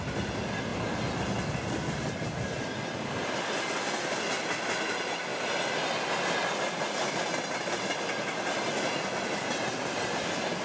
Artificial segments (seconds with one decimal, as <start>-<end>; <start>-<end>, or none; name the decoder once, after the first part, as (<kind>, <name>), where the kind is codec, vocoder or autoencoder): none

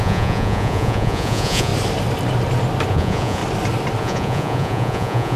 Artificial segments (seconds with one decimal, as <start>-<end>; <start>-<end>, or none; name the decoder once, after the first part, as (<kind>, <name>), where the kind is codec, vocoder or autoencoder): 0.0-1.7 (vocoder, Vocos); 2.9-3.4; 4.0-5.4

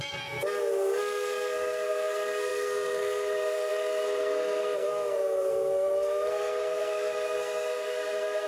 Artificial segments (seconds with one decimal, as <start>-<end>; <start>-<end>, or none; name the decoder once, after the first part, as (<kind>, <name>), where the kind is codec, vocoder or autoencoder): 0.0-8.5 (codec, SNAC)